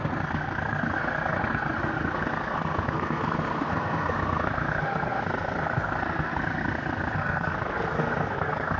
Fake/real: fake